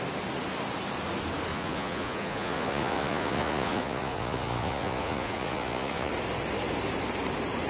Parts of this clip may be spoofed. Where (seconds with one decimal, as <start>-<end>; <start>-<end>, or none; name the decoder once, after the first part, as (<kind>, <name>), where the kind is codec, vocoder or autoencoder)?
1.5-6.1 (vocoder, Vocos)